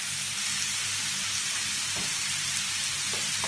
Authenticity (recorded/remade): recorded